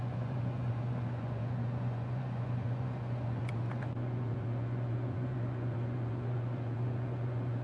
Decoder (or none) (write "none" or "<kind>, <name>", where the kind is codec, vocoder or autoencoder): vocoder, Vocos